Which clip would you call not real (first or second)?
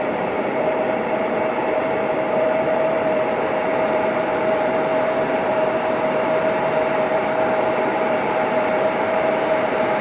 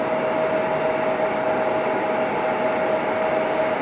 first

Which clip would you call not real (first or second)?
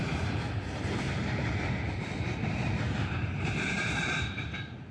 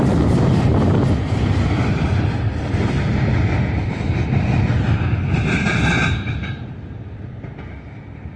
first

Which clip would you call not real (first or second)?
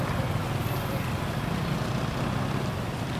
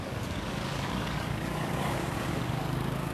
second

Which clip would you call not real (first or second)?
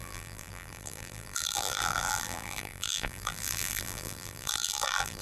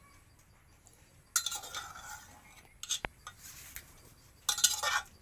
first